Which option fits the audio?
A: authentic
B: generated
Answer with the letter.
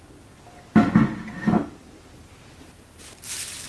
A